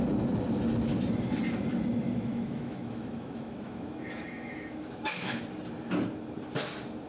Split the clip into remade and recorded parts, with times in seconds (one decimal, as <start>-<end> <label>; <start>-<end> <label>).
0.0-2.0 recorded; 2.0-5.4 remade; 5.4-7.1 recorded

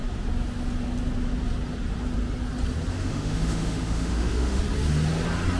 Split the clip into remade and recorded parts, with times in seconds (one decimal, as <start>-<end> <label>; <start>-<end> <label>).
0.0-2.9 recorded; 2.9-4.6 remade; 4.6-5.6 recorded

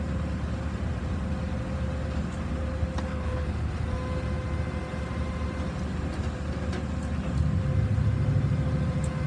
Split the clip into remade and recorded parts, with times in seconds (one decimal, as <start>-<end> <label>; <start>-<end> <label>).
0.0-3.1 recorded; 3.1-3.7 remade; 3.7-9.3 recorded

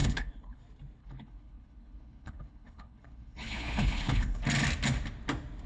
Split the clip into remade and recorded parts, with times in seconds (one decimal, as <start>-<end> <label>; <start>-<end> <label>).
0.0-0.6 remade; 0.6-1.0 recorded; 1.0-4.4 remade; 4.4-5.7 recorded

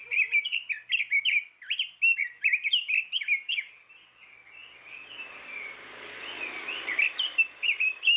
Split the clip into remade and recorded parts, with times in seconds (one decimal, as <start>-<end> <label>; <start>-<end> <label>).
0.0-0.7 remade; 0.7-8.2 recorded

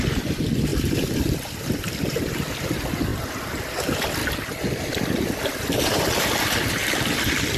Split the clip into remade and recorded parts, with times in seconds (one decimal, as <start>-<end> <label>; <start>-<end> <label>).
0.0-3.1 remade; 3.1-3.7 recorded; 3.7-4.2 remade; 4.2-4.8 recorded; 4.8-7.6 remade